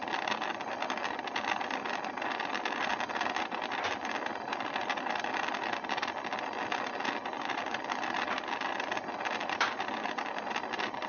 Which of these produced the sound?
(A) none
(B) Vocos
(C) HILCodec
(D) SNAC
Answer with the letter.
A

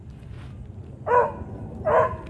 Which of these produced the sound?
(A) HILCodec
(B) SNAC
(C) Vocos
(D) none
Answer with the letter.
D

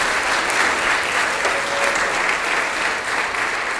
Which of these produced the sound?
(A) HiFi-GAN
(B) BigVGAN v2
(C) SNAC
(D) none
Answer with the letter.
D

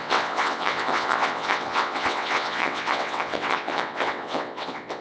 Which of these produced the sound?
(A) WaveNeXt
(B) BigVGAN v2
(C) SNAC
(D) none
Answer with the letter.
A